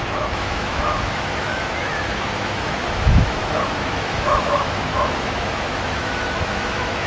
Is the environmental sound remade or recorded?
remade